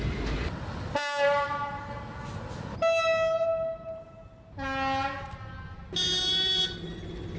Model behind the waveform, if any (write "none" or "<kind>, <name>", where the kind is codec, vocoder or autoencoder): none